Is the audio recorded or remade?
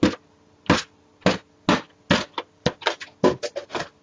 recorded